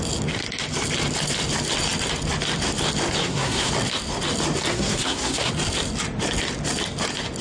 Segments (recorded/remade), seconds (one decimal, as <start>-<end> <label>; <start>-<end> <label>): 0.0-3.2 recorded; 3.2-3.7 remade; 3.7-4.7 recorded; 4.7-5.5 remade; 5.5-7.4 recorded